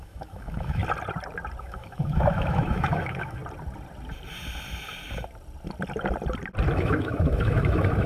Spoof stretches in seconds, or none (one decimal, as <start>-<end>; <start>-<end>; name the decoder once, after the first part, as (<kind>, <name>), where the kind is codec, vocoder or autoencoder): 0.0-0.8 (autoencoder, DAC-VAE); 1.6-3.4; 6.7-8.1